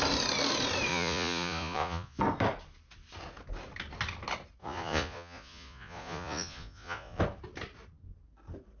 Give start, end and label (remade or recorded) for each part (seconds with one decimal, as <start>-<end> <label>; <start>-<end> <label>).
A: 0.0-0.9 recorded; 0.9-2.2 remade; 2.2-4.6 recorded; 4.6-7.2 remade; 7.2-8.8 recorded